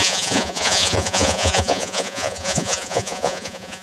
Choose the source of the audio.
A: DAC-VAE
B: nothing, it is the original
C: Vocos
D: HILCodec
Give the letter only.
C